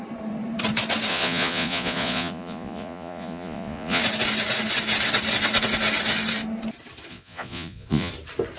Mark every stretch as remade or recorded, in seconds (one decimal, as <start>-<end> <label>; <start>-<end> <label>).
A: 0.0-1.1 recorded; 1.1-4.0 remade; 4.0-7.1 recorded; 7.1-8.1 remade; 8.1-8.6 recorded

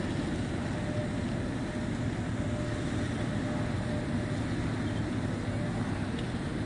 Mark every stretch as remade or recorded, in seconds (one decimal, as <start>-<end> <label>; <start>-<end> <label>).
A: 0.0-6.7 recorded

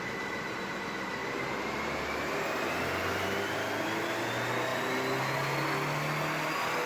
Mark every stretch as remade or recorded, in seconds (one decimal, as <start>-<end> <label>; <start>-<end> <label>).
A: 0.0-1.2 recorded; 1.2-2.7 remade; 2.7-6.9 recorded

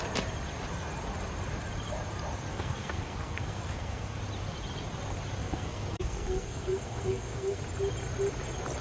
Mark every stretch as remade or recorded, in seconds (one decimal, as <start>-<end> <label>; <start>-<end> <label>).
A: 0.0-2.5 recorded; 2.5-4.2 remade; 4.2-5.4 recorded; 5.4-7.6 remade; 7.6-8.8 recorded

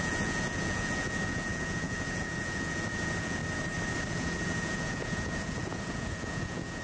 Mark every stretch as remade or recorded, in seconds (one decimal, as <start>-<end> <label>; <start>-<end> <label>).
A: 0.0-3.4 remade; 3.4-4.1 recorded; 4.1-6.8 remade

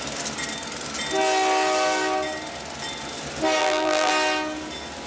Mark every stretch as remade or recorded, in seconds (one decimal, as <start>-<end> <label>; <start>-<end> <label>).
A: 0.0-3.6 recorded; 3.6-4.1 remade; 4.1-5.1 recorded